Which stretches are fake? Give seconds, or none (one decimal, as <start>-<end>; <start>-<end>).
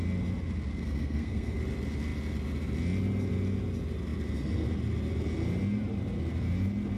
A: 0.7-1.6